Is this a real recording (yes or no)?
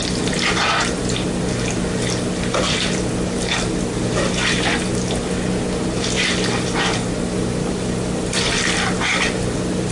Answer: yes